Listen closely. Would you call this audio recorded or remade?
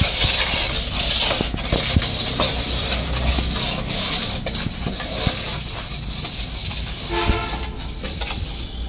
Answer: recorded